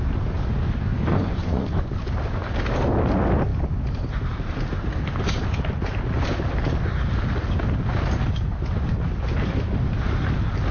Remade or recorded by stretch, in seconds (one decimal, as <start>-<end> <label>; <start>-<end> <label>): 0.0-0.9 recorded; 0.9-1.9 remade; 1.9-10.7 recorded